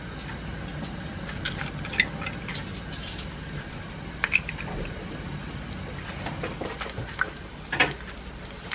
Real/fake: real